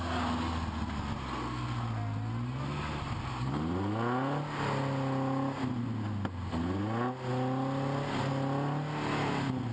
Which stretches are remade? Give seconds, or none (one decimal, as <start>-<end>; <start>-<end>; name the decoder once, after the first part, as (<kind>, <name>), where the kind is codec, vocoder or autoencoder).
none